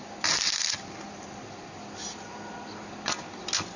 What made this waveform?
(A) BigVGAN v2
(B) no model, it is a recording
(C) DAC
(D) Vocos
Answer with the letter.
B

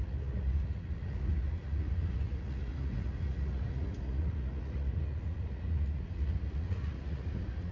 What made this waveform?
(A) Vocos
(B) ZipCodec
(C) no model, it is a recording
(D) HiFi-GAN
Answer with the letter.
A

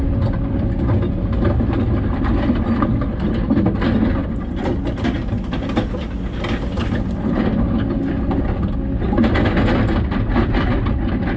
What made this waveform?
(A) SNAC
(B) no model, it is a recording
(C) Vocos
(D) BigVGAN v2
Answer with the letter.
B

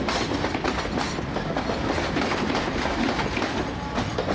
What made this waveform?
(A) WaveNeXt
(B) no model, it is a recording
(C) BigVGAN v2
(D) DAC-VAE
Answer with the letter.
B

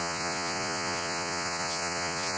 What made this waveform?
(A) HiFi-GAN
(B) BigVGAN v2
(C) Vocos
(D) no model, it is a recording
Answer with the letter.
C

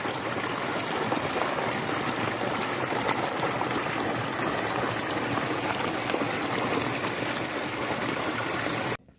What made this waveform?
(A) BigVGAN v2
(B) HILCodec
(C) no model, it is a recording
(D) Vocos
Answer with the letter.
C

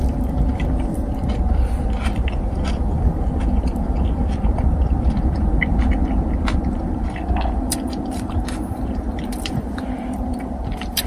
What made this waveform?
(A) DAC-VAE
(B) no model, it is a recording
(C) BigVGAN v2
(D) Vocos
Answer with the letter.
C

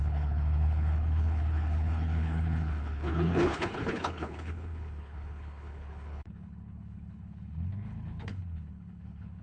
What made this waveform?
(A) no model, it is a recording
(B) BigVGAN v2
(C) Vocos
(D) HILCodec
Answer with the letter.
D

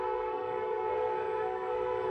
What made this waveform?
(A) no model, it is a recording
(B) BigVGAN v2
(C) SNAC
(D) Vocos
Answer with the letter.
C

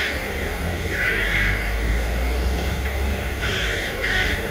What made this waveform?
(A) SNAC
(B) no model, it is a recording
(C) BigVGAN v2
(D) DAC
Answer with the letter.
D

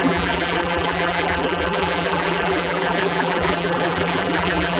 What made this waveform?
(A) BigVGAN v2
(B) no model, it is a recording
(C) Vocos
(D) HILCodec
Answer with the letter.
A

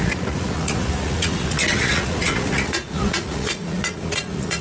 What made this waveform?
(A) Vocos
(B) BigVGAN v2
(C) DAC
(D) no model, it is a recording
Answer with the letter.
A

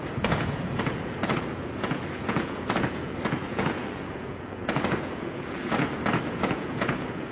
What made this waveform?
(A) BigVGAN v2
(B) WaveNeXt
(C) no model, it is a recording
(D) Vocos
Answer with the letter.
D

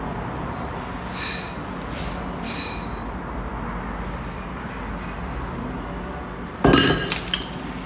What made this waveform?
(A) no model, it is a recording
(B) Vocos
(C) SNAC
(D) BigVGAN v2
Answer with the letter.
A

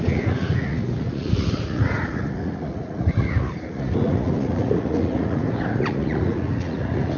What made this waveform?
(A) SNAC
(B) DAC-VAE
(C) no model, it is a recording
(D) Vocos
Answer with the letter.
D